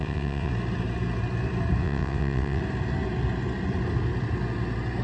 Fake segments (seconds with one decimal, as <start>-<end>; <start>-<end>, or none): 0.0-0.5; 1.8-2.6